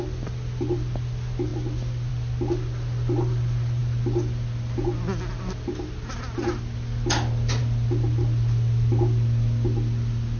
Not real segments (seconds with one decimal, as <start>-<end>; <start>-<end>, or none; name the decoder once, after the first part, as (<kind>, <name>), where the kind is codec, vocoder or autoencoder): none